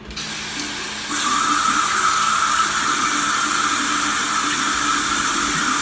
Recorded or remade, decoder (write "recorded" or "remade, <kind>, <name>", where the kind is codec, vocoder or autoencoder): recorded